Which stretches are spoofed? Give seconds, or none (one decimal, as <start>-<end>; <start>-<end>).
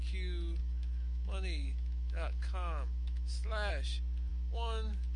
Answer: 0.6-3.7; 4.3-5.2